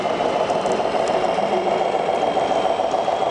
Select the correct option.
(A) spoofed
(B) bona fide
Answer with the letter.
B